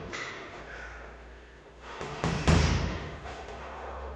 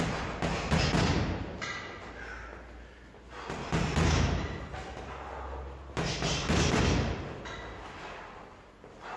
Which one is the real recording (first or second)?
second